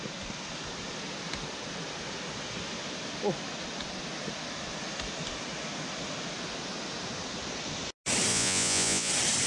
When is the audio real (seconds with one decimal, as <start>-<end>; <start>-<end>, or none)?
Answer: 0.0-8.3; 9.1-9.5